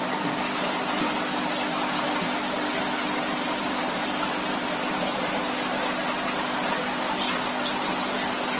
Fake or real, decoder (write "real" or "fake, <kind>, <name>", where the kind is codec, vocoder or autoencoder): real